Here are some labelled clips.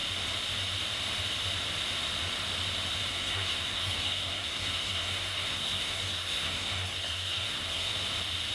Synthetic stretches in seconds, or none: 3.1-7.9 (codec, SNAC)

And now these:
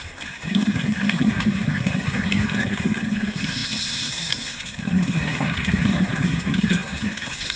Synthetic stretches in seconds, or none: 0.0-7.6 (codec, SNAC)